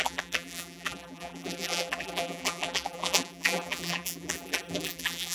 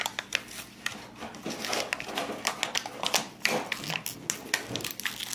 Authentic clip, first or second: second